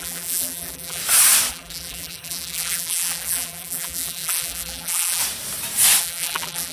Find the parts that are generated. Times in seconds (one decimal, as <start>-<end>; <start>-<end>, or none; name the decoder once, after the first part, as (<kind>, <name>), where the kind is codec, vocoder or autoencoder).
0.0-1.0 (vocoder, BigVGAN v2); 1.5-5.2; 6.0-6.7